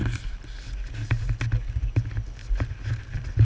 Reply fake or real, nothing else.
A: real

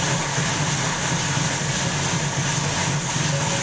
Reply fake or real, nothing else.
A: real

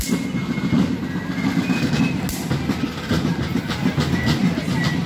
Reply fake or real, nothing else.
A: real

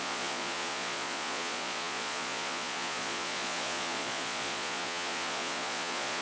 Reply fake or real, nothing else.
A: fake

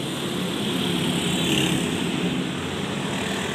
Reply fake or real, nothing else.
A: real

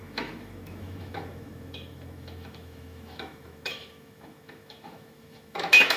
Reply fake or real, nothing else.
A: fake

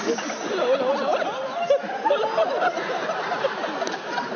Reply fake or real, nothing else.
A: real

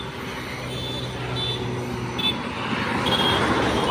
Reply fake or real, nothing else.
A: real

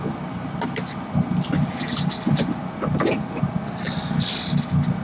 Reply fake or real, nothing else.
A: real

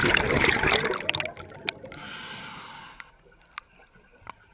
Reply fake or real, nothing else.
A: real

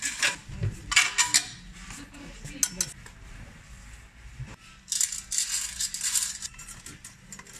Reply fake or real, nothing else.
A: real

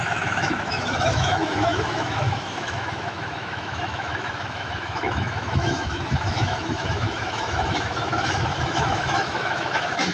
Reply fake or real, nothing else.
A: fake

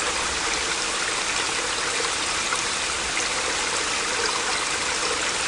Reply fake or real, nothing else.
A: real